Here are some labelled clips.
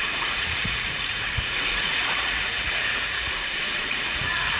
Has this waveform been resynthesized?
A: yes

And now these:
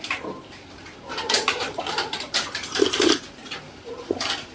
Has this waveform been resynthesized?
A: yes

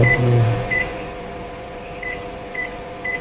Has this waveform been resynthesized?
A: yes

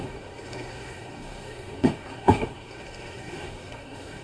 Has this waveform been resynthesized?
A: yes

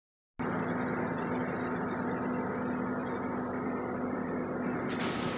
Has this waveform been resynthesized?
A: no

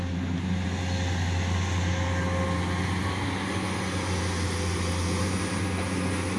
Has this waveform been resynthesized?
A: no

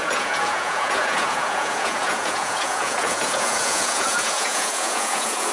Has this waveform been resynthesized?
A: yes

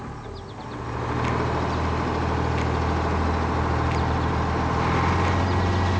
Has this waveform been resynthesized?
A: no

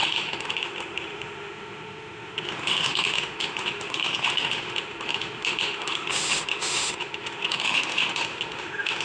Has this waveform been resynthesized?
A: yes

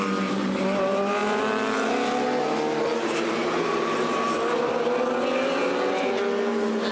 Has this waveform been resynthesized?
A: no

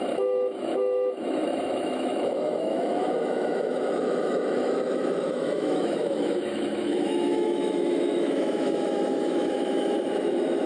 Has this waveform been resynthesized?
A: yes